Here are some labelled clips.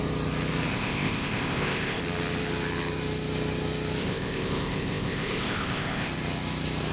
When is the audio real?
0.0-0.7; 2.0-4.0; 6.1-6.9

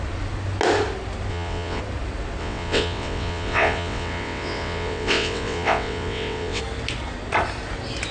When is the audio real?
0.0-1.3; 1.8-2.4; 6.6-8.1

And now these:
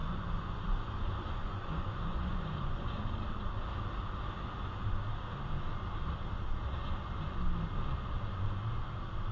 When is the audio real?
3.1-9.3

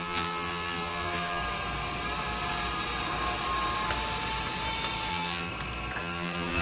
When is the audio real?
1.4-5.1; 5.5-6.0

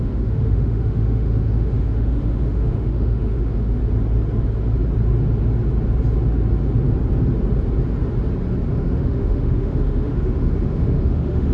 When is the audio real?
3.8-8.7

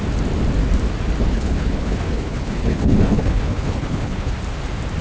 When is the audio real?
0.0-1.3; 4.3-5.0

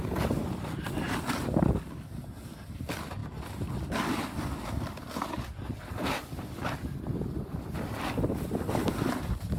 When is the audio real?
0.0-9.6

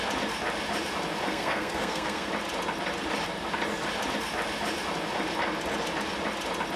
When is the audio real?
0.0-1.3; 2.3-6.8